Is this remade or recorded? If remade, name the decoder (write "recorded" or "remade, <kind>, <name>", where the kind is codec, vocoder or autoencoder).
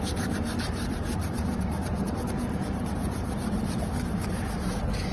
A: remade, vocoder, BigVGAN v2